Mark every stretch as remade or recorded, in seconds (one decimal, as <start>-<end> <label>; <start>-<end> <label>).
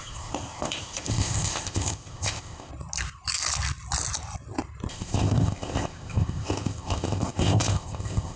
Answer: 0.0-2.7 remade; 2.7-4.9 recorded; 4.9-8.4 remade